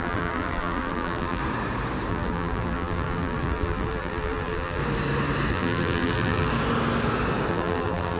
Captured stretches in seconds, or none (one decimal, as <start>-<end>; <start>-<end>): 1.4-2.1; 4.8-5.5; 6.5-7.5